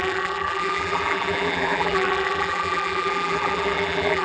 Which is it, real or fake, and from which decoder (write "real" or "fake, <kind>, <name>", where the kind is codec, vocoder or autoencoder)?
fake, vocoder, BigVGAN v2